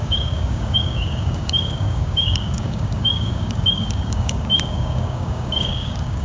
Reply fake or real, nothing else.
fake